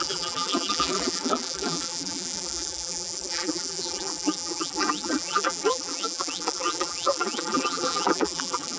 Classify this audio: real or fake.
fake